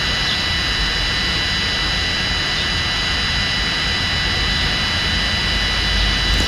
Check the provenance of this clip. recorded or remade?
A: recorded